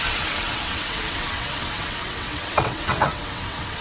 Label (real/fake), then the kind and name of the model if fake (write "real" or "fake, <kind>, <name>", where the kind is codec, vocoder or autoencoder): fake, vocoder, WaveNeXt